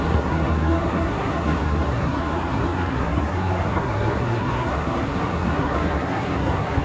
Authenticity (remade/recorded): remade